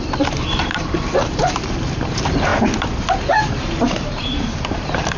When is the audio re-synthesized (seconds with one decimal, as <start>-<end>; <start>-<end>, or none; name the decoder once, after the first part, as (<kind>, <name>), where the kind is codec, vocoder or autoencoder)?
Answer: 0.0-2.5 (vocoder, BigVGAN v2); 3.1-5.2